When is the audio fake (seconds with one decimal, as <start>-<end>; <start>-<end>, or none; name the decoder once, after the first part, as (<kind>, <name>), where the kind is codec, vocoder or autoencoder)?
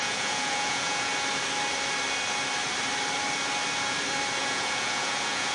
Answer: 0.0-1.1 (vocoder, Vocos); 4.4-5.5